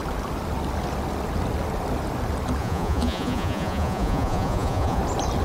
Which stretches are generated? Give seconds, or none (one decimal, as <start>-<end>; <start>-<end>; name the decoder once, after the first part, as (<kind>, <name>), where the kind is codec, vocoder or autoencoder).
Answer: 2.6-5.0 (vocoder, Vocos)